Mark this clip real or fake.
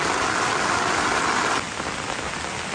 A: real